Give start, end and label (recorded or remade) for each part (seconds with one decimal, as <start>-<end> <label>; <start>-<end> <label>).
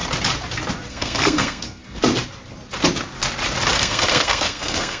0.0-0.9 recorded; 0.9-1.8 remade; 1.8-3.7 recorded; 3.7-5.0 remade